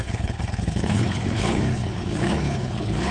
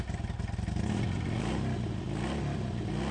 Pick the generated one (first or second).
first